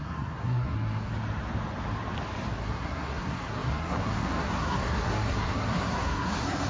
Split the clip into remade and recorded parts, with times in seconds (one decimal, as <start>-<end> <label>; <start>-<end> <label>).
0.0-1.1 remade; 1.1-2.6 recorded; 2.6-6.7 remade